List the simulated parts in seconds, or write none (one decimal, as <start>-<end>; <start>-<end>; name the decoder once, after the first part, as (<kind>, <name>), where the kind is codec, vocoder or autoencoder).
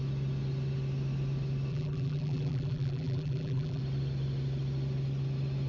1.7-3.8 (vocoder, BigVGAN v2)